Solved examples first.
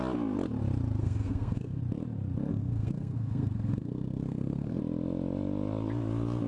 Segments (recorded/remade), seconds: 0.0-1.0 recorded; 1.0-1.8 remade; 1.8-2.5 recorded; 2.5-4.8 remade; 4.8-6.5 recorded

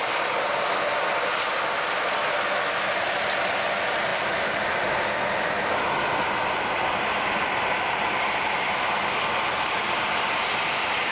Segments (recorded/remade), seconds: 0.0-11.1 recorded

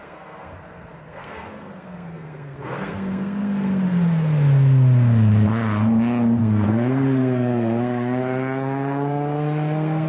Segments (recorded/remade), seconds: 0.0-3.8 remade; 3.8-6.4 recorded; 6.4-10.1 remade

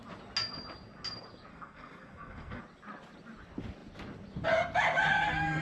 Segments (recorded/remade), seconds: 0.0-1.5 recorded; 1.5-2.6 remade; 2.6-5.6 recorded

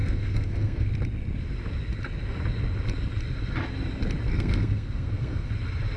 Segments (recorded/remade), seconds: 0.0-0.9 remade; 0.9-4.3 recorded; 4.3-5.5 remade; 5.5-6.0 recorded